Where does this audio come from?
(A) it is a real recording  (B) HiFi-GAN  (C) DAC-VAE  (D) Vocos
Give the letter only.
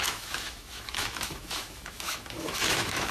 C